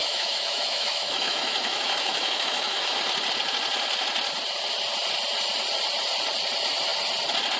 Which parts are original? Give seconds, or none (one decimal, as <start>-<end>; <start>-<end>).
3.0-7.6